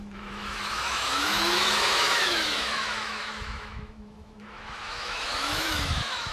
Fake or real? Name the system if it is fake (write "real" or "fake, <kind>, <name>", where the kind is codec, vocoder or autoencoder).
fake, autoencoder, DAC-VAE